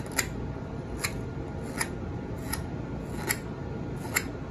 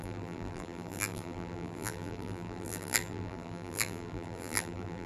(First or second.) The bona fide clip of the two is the first